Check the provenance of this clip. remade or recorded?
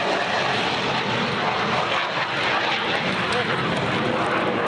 recorded